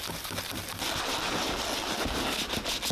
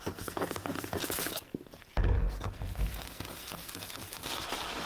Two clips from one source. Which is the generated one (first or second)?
second